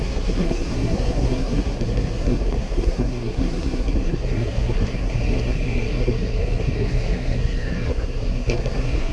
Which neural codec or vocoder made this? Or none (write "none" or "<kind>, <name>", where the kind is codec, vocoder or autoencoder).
codec, SNAC